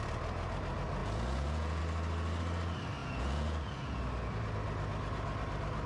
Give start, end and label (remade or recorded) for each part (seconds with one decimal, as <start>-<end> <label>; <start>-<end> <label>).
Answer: 0.0-1.0 recorded; 1.0-1.8 remade; 1.8-3.0 recorded; 3.0-4.0 remade; 4.0-5.9 recorded